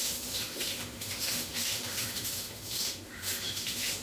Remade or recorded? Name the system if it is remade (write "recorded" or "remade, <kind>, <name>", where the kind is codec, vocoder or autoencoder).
remade, autoencoder, DAC-VAE